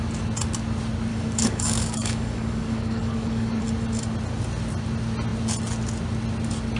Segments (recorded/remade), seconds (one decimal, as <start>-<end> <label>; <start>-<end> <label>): 0.0-1.1 recorded; 1.1-3.6 remade; 3.6-6.8 recorded